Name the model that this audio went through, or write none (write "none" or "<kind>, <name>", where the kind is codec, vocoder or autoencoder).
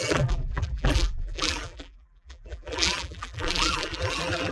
vocoder, BigVGAN v2